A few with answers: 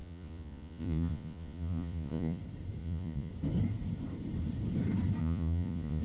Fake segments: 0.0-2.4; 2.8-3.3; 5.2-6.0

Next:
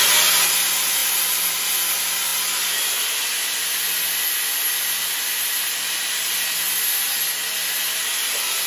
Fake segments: 1.0-1.8

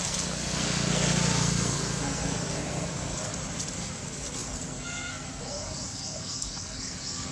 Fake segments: 0.0-3.3; 3.8-7.3